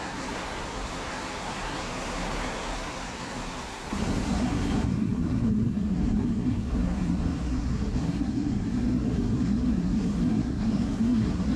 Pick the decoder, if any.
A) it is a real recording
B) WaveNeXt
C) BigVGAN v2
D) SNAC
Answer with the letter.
D